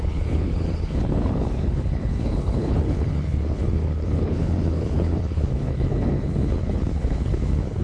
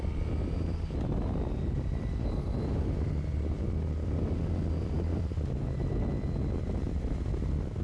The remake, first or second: first